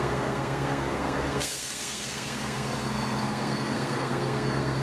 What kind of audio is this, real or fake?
fake